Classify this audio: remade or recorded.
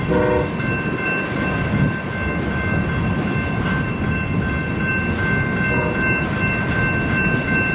recorded